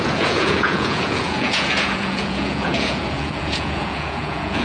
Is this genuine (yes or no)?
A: no